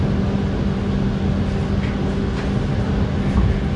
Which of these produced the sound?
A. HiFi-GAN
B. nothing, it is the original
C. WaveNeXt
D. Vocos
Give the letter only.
B